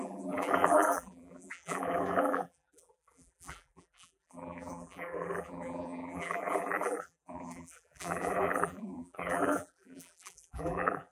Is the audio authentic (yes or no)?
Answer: no